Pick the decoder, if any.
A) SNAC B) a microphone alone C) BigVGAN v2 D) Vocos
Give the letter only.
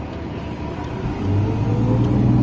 B